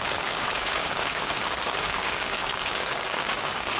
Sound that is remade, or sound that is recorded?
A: remade